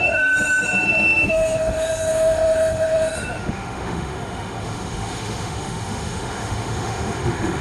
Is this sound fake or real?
fake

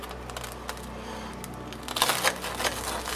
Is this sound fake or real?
real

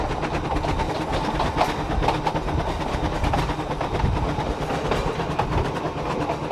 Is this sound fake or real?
real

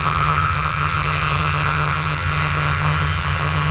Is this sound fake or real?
fake